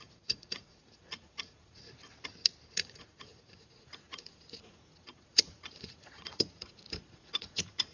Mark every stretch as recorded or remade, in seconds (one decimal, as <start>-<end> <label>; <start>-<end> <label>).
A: 0.0-1.8 remade; 1.8-2.7 recorded; 2.7-7.9 remade